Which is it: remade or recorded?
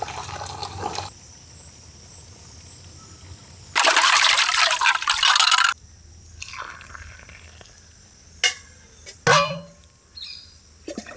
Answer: recorded